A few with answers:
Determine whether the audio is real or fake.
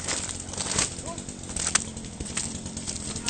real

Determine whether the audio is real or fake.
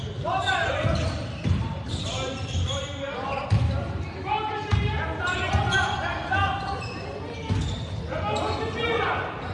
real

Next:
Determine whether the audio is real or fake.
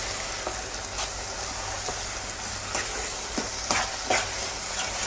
real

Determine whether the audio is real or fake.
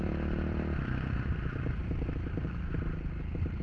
fake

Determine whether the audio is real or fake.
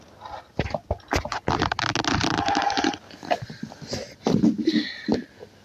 real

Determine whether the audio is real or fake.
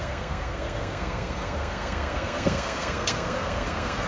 fake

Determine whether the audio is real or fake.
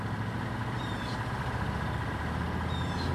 real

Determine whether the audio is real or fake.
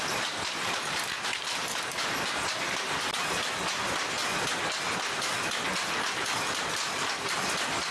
real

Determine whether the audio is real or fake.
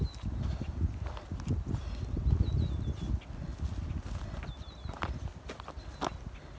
real